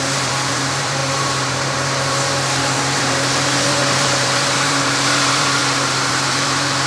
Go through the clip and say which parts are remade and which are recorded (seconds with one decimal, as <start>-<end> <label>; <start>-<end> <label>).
0.0-5.6 remade; 5.6-6.1 recorded; 6.1-6.9 remade